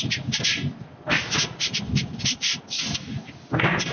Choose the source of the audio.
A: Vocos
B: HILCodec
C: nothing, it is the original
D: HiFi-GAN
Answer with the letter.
C